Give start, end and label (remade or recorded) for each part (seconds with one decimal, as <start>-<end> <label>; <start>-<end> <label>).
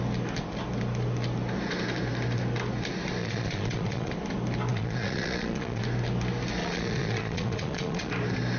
0.0-3.2 recorded; 3.2-4.1 remade; 4.1-4.7 recorded; 4.7-5.8 remade; 5.8-6.6 recorded; 6.6-8.1 remade; 8.1-8.6 recorded